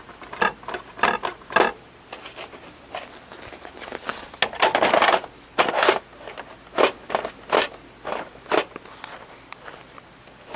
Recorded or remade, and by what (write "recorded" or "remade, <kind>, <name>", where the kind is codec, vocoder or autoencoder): recorded